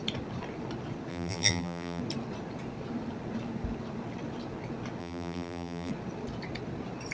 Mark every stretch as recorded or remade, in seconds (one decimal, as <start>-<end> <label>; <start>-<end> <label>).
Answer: 0.0-1.1 recorded; 1.1-2.0 remade; 2.0-5.0 recorded; 5.0-5.9 remade; 5.9-7.1 recorded